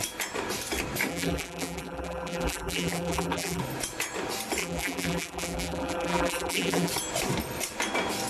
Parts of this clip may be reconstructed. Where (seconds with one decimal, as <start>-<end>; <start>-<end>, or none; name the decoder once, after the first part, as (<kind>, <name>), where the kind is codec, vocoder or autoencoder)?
1.1-3.6 (vocoder, BigVGAN v2); 4.6-6.9